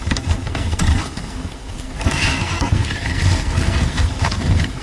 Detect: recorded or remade remade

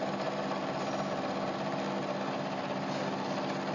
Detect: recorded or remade recorded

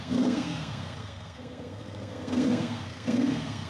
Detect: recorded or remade remade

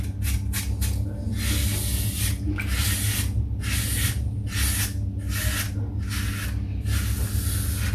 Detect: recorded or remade recorded